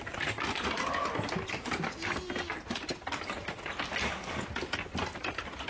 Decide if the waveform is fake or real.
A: real